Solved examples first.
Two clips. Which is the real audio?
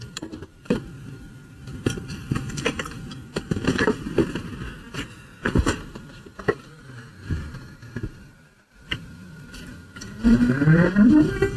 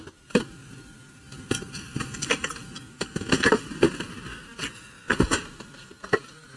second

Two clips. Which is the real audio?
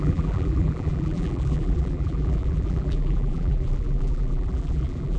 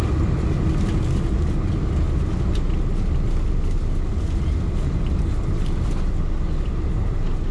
second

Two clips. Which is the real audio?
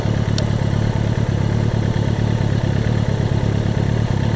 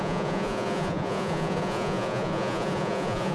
first